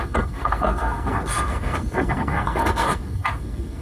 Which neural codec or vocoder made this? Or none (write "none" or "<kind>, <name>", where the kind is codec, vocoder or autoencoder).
codec, SNAC